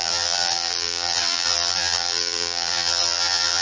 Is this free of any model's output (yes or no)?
no